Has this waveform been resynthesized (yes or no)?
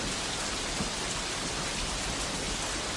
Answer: no